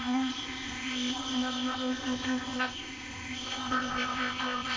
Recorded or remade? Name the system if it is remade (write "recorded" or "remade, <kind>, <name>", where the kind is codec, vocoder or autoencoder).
remade, codec, ZipCodec